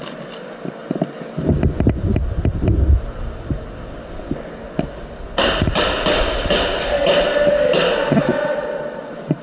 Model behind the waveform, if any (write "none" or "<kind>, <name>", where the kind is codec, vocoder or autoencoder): none